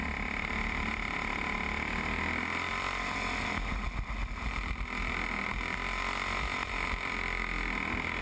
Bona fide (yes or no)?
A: yes